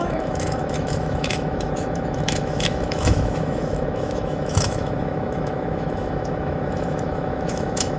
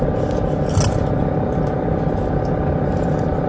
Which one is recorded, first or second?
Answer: second